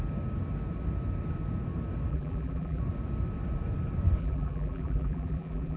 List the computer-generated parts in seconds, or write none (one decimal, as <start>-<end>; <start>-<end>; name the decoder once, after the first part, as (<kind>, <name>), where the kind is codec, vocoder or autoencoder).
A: 2.1-2.8 (vocoder, BigVGAN v2); 4.2-5.8